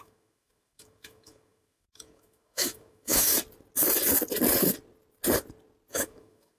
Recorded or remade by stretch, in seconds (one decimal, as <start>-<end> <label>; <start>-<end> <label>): 0.0-3.3 remade; 3.3-5.9 recorded; 5.9-6.6 remade